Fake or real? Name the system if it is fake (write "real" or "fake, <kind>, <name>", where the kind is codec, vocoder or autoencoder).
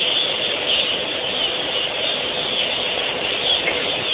real